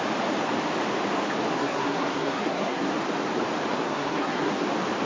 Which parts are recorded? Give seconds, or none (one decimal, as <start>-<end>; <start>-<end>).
0.0-1.5; 2.9-3.7; 4.6-5.0

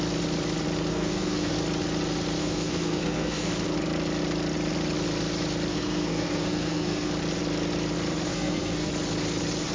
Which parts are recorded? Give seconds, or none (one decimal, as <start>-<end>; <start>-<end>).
0.0-0.9; 1.5-2.4; 3.5-5.7; 7.1-8.3; 8.9-9.7

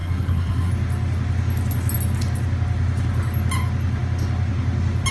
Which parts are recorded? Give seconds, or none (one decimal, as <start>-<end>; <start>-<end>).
0.7-5.1

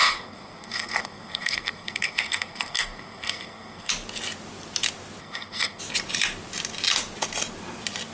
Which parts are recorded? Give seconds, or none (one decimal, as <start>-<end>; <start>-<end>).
3.9-5.2; 5.8-8.1

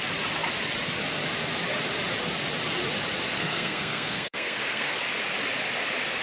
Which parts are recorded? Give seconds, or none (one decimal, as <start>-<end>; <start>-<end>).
0.0-3.3; 5.0-6.2

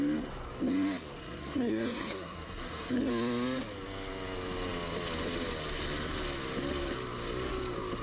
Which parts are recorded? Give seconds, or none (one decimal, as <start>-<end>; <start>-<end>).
0.0-1.2; 3.1-8.0

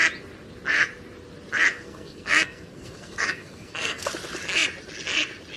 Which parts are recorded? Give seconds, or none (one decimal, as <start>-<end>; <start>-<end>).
0.0-1.7; 4.1-5.6

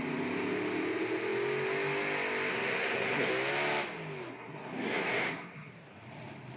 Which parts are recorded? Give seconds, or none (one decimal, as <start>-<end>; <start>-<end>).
0.0-2.5; 3.3-4.3; 5.7-6.6